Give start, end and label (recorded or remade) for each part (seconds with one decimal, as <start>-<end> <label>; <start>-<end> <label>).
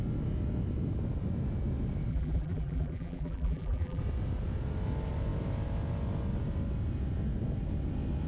0.0-2.1 recorded; 2.1-4.0 remade; 4.0-8.3 recorded